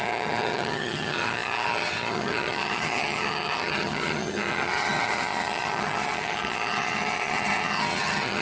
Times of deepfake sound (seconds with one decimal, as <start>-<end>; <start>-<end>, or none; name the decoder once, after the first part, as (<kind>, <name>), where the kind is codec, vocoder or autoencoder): 0.0-8.4 (vocoder, HiFi-GAN)